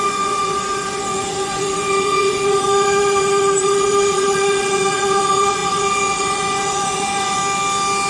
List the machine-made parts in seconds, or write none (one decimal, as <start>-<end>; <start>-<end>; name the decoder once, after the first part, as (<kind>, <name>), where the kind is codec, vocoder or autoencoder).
0.0-7.4 (vocoder, Vocos)